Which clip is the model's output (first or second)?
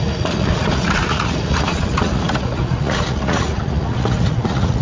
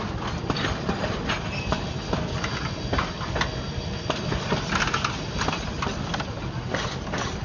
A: first